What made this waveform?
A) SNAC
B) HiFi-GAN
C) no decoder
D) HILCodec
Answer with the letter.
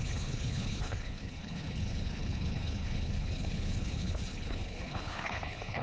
D